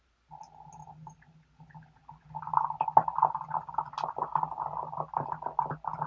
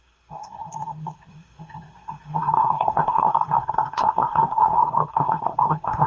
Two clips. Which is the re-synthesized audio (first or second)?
second